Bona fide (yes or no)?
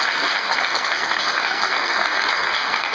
no